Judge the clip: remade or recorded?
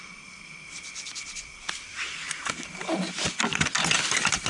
remade